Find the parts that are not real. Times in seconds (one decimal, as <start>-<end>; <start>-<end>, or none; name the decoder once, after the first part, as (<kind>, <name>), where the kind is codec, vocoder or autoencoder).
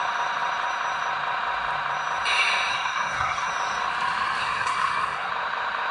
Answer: 2.7-3.5 (codec, SNAC); 4.4-5.3